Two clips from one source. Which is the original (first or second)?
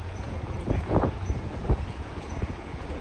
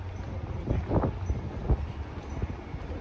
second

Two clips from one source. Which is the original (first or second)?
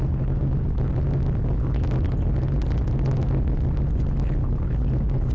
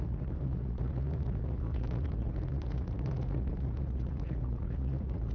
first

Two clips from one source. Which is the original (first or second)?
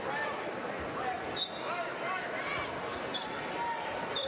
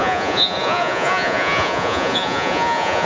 first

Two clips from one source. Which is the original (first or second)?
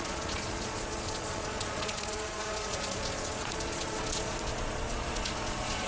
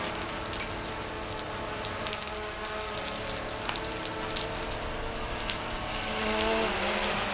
second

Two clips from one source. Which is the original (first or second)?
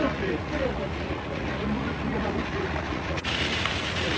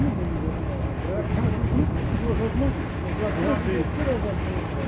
second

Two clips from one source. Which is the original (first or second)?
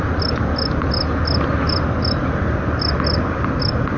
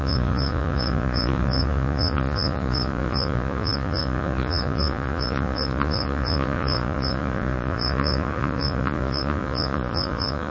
first